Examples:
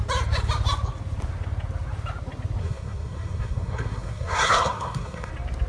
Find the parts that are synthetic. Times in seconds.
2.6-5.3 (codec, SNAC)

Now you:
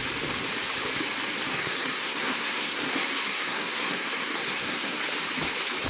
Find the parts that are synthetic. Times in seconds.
1.5-5.0 (codec, SNAC)

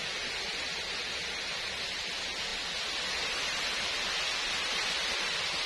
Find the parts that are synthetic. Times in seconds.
none

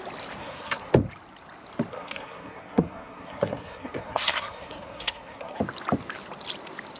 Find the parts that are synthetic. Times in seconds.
0.4-0.9 (codec, SNAC); 1.9-5.6

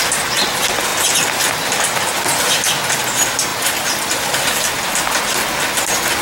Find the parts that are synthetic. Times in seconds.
none

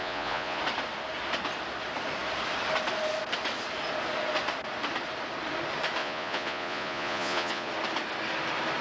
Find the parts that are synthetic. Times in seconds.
0.0-0.6 (vocoder, Vocos); 6.0-7.7

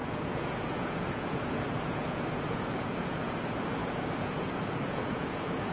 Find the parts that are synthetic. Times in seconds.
0.0-3.4 (vocoder, Vocos); 3.8-5.7